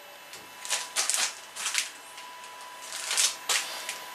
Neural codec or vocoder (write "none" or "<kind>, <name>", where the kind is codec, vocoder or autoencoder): none